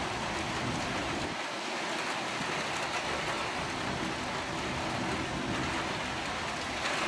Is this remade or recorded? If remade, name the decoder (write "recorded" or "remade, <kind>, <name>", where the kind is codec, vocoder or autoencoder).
recorded